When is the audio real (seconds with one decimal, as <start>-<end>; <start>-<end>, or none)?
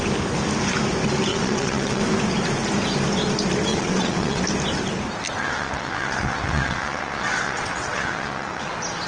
0.0-1.3; 2.0-3.7; 4.4-5.4; 8.7-9.1